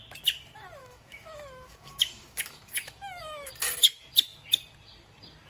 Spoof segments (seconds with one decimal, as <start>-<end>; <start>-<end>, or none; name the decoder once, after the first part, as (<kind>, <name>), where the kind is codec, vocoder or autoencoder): 0.8-3.5 (autoencoder, DAC-VAE)